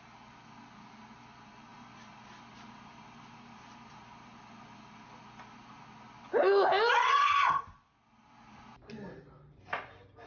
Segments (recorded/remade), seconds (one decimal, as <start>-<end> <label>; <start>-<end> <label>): 0.0-7.0 recorded; 7.0-7.6 remade; 7.6-10.3 recorded